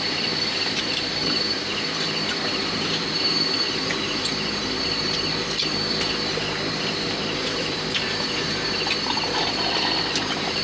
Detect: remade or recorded remade